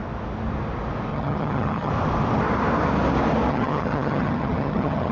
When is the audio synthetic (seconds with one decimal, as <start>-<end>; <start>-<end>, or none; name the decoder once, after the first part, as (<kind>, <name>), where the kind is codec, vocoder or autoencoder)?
1.1-1.9 (vocoder, HiFi-GAN); 3.5-5.1